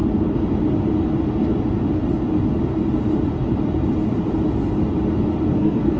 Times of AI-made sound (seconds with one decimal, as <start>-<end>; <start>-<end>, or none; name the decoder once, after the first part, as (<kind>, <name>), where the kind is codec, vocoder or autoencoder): 5.5-6.0 (codec, SNAC)